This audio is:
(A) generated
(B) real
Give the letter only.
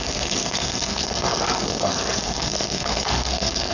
A